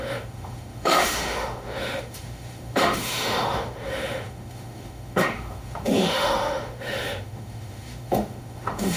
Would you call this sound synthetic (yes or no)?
yes